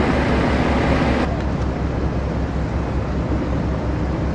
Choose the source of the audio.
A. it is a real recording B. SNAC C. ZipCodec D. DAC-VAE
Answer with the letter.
A